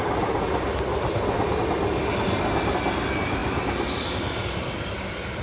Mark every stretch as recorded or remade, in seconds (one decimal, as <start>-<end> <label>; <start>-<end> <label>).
0.0-5.4 recorded